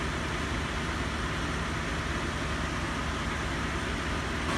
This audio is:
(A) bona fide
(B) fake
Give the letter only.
A